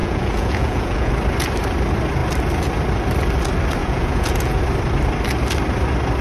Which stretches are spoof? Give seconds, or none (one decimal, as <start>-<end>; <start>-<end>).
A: 0.0-1.1; 3.8-4.6